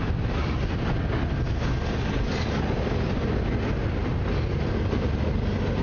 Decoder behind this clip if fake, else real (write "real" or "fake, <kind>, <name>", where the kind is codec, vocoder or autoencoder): real